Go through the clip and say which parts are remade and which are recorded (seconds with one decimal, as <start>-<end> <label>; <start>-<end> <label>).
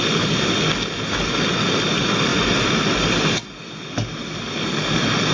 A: 0.0-5.3 recorded